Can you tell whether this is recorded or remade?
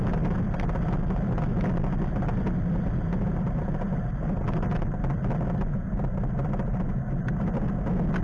recorded